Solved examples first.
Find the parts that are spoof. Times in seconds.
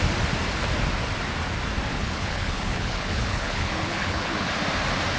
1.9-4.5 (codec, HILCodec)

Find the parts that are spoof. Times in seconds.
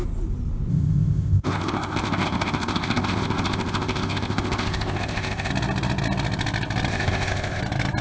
0.7-5.5 (codec, ZipCodec); 6.9-7.6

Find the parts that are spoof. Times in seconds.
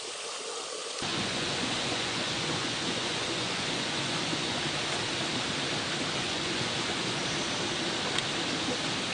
1.1-4.6 (vocoder, Vocos); 6.2-7.2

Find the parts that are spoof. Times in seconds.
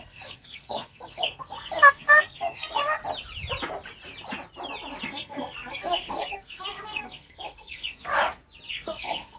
0.0-3.0 (codec, SNAC); 5.0-8.1; 8.7-9.4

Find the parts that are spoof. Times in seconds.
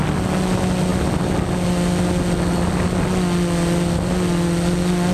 none